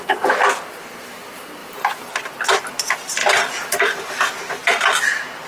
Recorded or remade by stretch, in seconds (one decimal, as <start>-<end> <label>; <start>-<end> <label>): 0.0-1.6 recorded; 1.6-2.1 remade; 2.1-3.2 recorded; 3.2-4.1 remade; 4.1-5.5 recorded